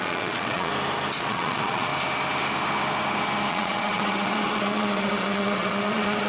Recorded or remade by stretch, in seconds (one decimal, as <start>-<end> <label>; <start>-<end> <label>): 0.0-0.7 remade; 0.7-1.2 recorded; 1.2-1.9 remade; 1.9-3.5 recorded; 3.5-6.3 remade